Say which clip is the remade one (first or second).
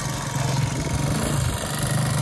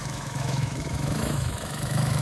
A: second